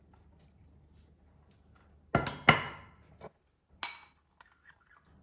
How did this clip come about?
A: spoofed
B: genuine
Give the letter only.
B